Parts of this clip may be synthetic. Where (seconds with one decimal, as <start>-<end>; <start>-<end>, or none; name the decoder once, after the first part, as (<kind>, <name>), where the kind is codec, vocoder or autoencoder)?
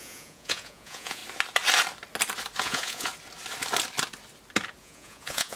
0.0-1.2 (vocoder, Vocos); 2.6-3.1; 4.8-5.6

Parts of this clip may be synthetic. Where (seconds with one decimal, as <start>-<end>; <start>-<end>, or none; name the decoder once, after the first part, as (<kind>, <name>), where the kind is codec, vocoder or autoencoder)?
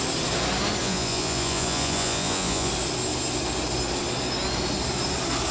0.8-2.7 (vocoder, Vocos)